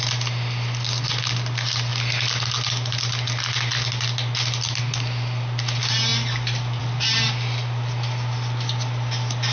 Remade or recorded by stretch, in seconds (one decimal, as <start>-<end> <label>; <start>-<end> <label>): 0.0-9.5 recorded